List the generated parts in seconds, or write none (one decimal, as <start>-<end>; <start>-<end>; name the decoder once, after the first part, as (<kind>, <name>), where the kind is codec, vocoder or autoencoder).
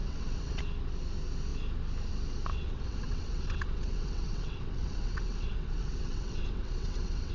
0.0-0.6 (vocoder, WaveNeXt); 2.5-7.3